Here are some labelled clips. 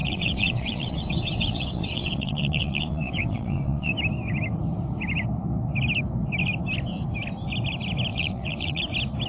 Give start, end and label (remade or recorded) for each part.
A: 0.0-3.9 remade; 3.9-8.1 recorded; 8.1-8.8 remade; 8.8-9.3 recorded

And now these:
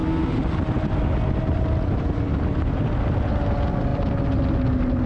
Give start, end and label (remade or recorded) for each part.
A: 0.0-5.1 recorded

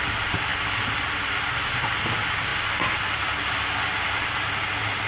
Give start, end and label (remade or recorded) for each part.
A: 0.0-5.1 recorded

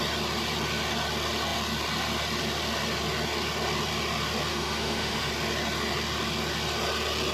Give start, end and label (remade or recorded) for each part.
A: 0.0-4.5 recorded; 4.5-5.3 remade; 5.3-7.3 recorded

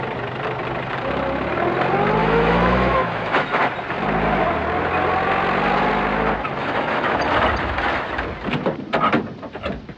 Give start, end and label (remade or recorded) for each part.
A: 0.0-2.2 recorded; 2.2-3.6 remade; 3.6-6.6 recorded; 6.6-7.2 remade; 7.2-10.0 recorded

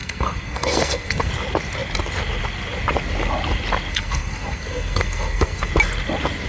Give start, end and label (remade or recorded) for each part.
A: 0.0-1.3 remade; 1.3-3.9 recorded; 3.9-5.7 remade; 5.7-6.5 recorded